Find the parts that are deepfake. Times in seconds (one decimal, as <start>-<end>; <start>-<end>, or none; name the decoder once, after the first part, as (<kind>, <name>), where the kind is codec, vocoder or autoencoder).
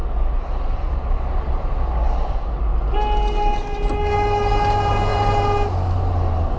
none